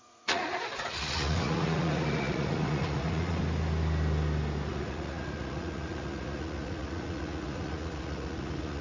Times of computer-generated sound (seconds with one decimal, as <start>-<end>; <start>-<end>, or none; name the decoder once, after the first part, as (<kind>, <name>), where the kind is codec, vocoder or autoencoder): 0.0-3.4 (vocoder, Vocos); 4.7-8.8